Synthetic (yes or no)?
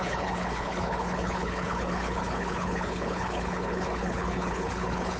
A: yes